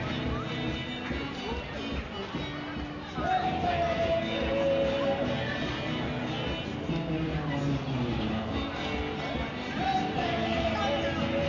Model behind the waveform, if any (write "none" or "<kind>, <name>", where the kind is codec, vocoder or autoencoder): none